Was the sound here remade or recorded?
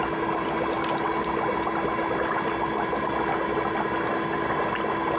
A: recorded